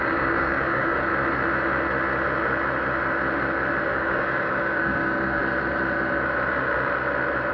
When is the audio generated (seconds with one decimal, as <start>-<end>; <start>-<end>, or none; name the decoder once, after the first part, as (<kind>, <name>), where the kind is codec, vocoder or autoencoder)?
0.0-1.1 (codec, DAC); 3.8-5.4